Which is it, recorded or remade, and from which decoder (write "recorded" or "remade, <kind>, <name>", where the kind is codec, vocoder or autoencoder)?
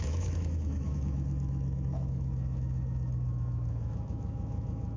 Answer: remade, autoencoder, DAC-VAE